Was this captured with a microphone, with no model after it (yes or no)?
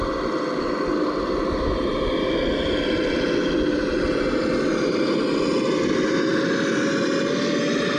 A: yes